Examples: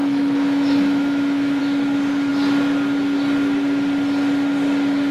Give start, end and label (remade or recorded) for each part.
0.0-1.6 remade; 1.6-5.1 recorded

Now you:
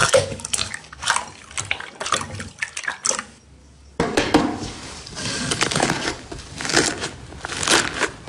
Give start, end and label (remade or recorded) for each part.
0.0-1.1 remade; 1.1-3.6 recorded; 3.6-7.0 remade; 7.0-8.3 recorded